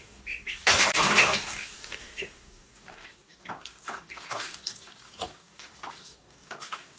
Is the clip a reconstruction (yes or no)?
yes